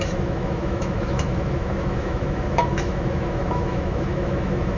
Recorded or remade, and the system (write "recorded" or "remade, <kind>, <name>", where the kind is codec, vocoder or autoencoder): remade, autoencoder, DAC-VAE